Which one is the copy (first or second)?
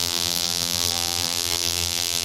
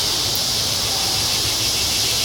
first